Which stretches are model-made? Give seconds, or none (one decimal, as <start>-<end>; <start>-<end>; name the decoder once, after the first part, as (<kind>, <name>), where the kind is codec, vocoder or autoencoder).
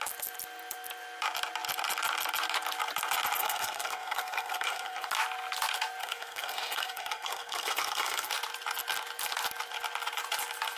3.4-5.1 (codec, SNAC); 6.0-8.3